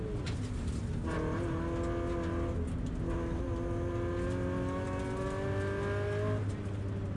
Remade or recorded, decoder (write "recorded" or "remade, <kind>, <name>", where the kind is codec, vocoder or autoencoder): recorded